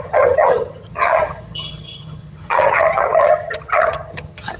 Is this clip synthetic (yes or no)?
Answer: yes